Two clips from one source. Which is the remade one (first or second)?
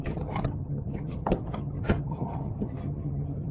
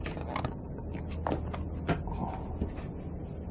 first